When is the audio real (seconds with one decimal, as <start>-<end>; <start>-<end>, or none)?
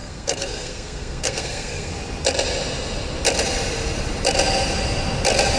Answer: 1.9-5.6